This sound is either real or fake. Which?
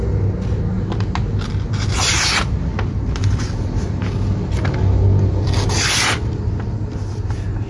real